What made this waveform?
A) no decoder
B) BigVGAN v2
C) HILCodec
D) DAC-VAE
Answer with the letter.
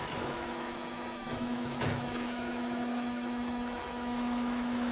D